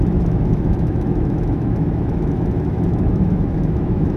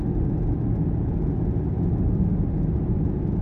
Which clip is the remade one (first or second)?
first